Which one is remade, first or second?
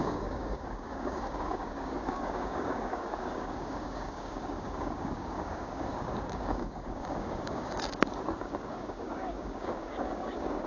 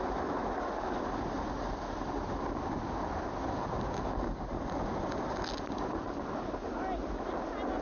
first